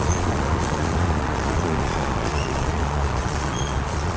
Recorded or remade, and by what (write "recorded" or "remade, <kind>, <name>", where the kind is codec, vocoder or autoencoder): remade, vocoder, Vocos